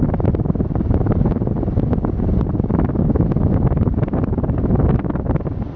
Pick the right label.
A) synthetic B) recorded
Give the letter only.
B